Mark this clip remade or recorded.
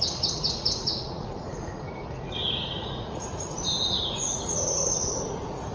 remade